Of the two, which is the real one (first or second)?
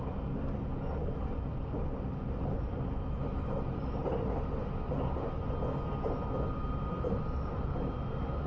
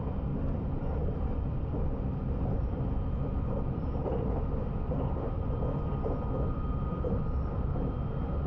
first